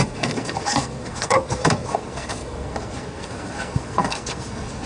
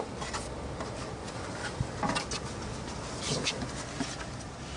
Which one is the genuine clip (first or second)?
second